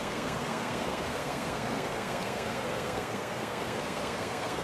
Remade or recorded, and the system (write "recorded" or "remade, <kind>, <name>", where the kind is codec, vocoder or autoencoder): remade, codec, SNAC